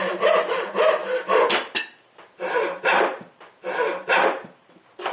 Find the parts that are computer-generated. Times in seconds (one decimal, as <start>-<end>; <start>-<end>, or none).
0.0-1.0; 2.2-3.6; 4.2-5.1